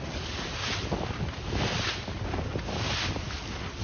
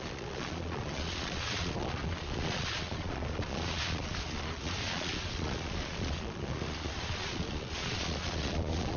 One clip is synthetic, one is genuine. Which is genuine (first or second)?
first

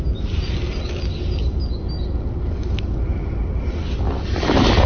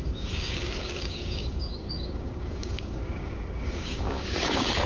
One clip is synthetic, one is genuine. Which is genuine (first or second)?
first